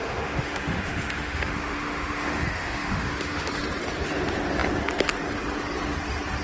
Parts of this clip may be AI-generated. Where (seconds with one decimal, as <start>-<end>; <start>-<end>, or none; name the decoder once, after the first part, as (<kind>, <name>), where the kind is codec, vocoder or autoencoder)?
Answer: 0.0-3.5 (autoencoder, DAC-VAE)